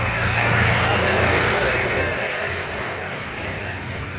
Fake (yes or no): yes